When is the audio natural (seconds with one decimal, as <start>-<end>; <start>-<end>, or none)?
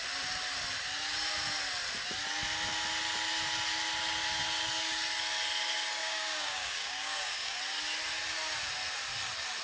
0.0-6.0; 7.6-9.6